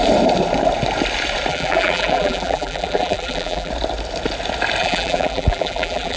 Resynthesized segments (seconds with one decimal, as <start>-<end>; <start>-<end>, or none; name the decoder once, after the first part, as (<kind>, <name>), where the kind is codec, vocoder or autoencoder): 1.5-3.7 (vocoder, BigVGAN v2); 4.8-6.2